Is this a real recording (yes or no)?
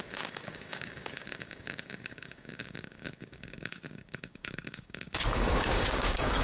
no